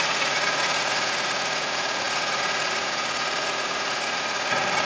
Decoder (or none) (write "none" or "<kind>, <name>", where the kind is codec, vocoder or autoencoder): vocoder, Vocos